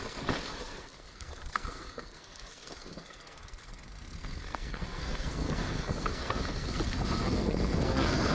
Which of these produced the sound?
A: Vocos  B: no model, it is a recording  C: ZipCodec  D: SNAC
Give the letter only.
D